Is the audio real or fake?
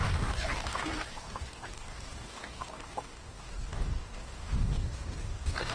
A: fake